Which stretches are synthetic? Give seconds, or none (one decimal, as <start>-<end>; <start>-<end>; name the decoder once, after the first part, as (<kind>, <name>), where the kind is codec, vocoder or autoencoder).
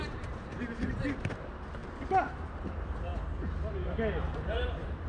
0.0-1.8 (vocoder, BigVGAN v2); 2.3-3.1; 4.2-5.1